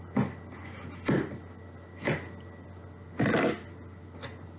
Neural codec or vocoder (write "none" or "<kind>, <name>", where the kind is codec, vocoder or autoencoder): none